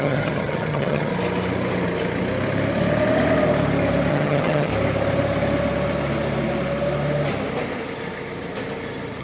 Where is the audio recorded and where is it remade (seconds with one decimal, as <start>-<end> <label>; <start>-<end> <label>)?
0.0-1.1 remade; 1.1-4.1 recorded; 4.1-4.7 remade; 4.7-9.2 recorded